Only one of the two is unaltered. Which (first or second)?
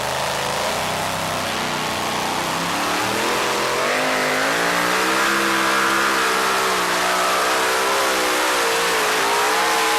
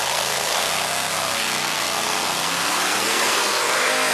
first